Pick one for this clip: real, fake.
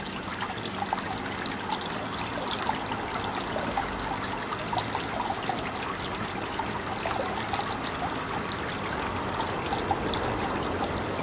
real